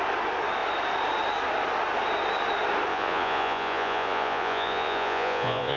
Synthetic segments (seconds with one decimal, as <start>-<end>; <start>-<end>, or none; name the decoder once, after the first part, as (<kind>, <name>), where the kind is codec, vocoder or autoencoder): 2.9-5.8 (vocoder, Vocos)